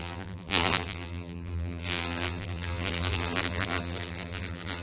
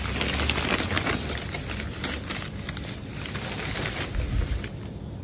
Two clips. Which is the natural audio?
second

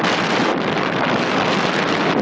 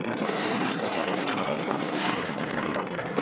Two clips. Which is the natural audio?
first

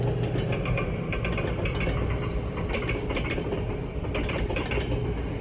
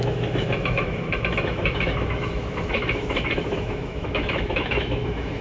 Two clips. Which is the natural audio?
first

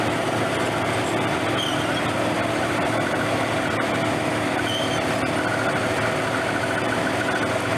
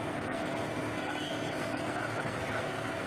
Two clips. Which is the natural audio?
first